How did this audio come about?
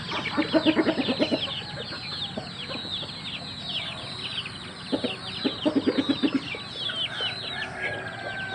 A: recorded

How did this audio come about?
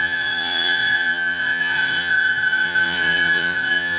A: remade